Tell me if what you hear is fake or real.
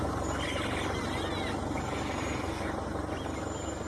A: real